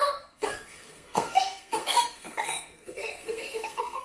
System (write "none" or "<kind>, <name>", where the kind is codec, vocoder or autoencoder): codec, SNAC